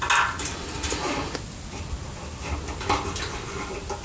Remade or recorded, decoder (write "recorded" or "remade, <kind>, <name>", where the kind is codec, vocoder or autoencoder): recorded